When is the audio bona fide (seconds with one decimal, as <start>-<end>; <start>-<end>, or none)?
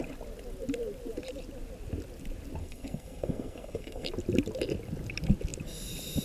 0.0-2.6; 4.1-6.2